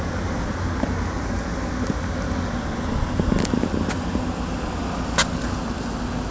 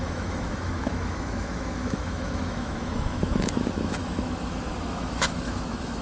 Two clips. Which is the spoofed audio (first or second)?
second